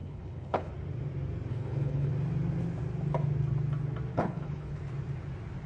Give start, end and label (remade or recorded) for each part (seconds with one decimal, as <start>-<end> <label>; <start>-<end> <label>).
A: 0.0-0.7 remade; 0.7-1.5 recorded; 1.5-2.1 remade; 2.1-4.1 recorded; 4.1-4.8 remade; 4.8-5.7 recorded

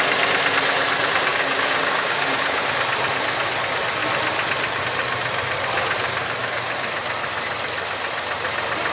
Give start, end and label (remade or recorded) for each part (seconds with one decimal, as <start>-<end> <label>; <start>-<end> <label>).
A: 0.0-1.3 recorded; 1.3-2.7 remade; 2.7-6.4 recorded; 6.4-6.9 remade; 6.9-8.9 recorded